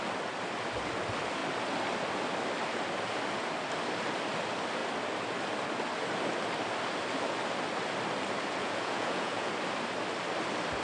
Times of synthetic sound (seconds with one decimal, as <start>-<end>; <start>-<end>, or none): 8.6-9.5